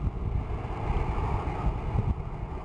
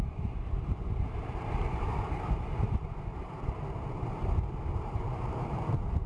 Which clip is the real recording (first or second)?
first